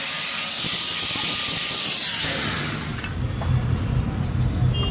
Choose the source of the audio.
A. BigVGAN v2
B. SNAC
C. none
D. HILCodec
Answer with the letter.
C